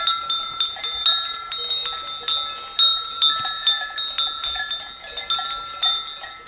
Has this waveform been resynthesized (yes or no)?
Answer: no